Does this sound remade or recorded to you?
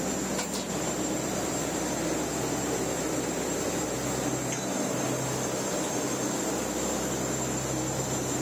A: recorded